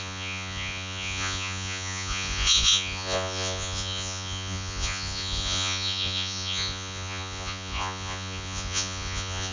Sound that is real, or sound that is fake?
fake